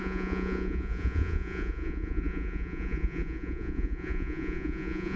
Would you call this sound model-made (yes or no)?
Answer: yes